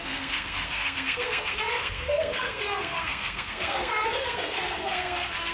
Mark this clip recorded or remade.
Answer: remade